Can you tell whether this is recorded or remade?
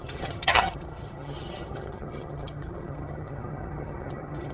remade